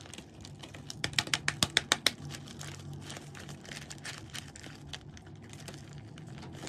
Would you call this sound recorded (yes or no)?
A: yes